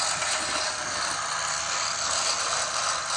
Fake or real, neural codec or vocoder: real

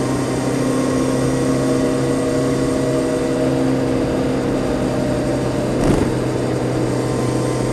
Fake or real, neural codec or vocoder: real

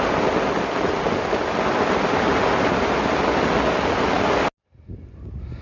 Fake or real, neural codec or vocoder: real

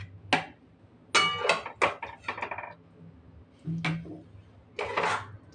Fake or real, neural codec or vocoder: real